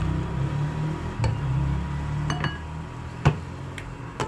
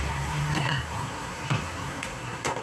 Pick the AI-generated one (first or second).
second